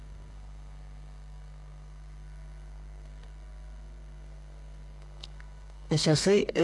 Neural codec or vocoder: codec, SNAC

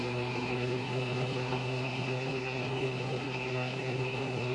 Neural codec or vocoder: codec, SNAC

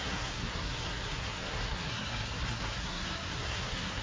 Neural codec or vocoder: codec, SNAC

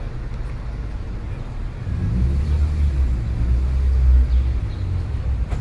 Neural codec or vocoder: none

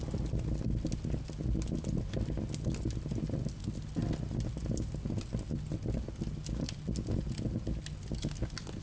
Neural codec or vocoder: none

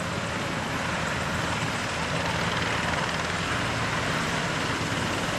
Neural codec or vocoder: none